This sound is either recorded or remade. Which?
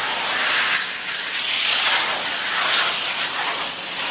recorded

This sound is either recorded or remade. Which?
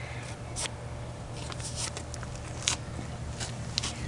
recorded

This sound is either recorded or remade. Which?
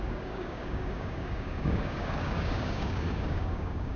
remade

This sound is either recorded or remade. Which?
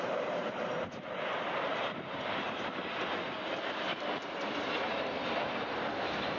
remade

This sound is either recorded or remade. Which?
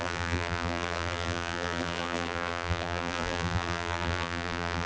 remade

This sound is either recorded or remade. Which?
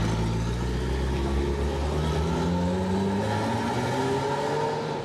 recorded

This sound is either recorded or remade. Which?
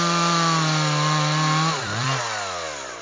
remade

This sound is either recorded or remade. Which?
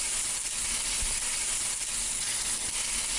recorded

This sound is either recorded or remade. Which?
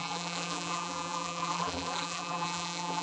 remade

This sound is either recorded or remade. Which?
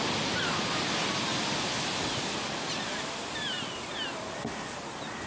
recorded